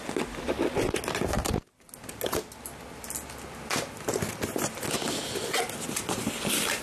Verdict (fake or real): real